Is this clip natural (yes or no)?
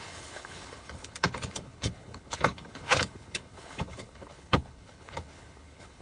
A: no